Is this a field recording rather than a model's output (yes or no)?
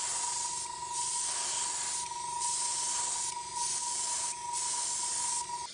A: yes